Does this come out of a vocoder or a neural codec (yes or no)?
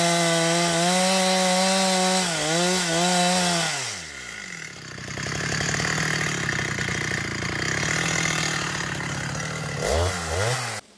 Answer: no